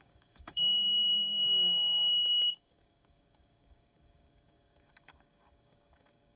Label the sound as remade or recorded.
remade